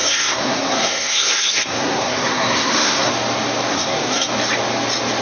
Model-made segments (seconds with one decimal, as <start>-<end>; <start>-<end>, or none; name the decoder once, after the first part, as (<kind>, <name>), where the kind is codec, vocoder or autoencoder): 0.0-3.1 (codec, SNAC); 3.7-4.3